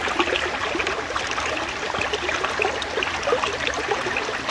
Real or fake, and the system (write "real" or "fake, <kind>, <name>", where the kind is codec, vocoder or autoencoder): real